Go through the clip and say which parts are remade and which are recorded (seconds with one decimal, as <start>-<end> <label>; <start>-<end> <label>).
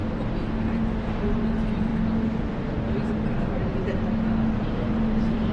0.0-0.6 recorded; 0.6-1.9 remade; 1.9-3.1 recorded; 3.1-3.7 remade; 3.7-4.6 recorded; 4.6-5.5 remade